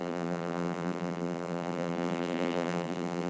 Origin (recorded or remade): remade